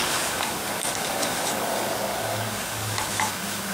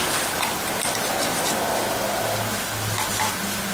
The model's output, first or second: first